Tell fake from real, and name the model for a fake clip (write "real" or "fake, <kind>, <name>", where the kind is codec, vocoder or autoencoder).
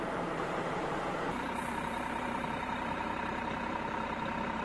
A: fake, vocoder, BigVGAN v2